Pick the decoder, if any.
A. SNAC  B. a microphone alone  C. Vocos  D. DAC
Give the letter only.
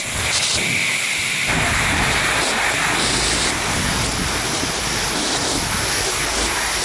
B